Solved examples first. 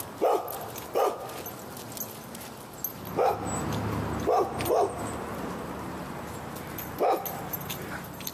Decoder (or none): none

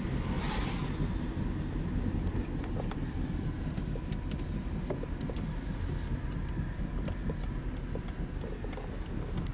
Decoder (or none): none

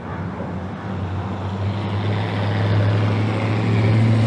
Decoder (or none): none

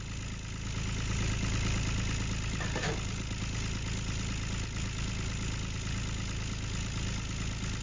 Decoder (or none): none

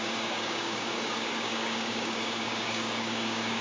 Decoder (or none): codec, DAC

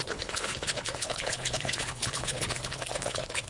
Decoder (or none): codec, HILCodec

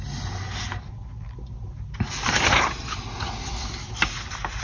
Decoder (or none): none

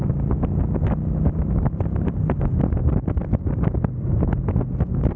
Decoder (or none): none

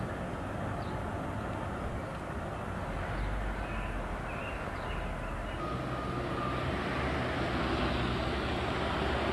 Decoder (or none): none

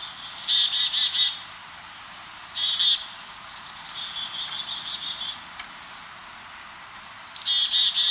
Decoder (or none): vocoder, BigVGAN v2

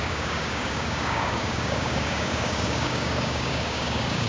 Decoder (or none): codec, DAC